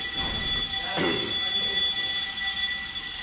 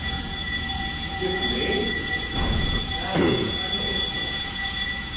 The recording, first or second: first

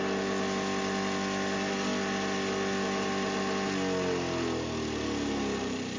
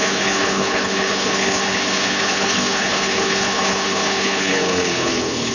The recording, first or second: first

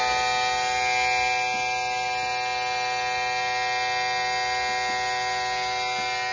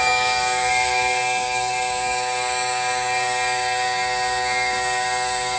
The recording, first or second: first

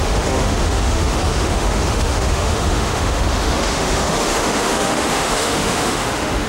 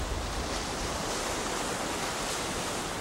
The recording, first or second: second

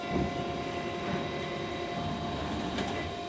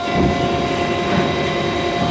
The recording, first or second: second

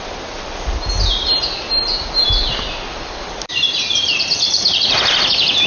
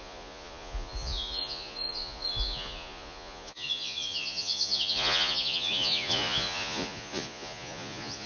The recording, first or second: first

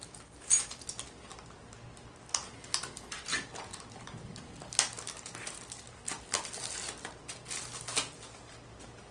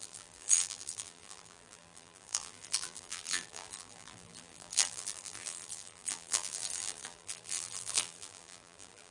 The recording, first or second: first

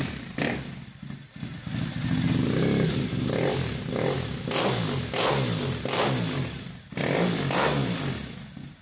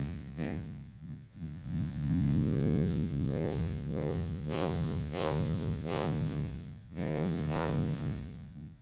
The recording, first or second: first